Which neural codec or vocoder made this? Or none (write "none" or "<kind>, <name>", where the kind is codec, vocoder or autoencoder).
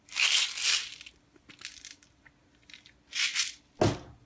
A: none